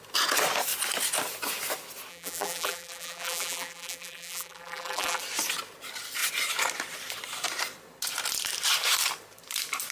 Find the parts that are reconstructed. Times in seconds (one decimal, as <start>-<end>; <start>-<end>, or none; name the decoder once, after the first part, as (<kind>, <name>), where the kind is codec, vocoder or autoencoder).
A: 2.1-5.2 (vocoder, BigVGAN v2)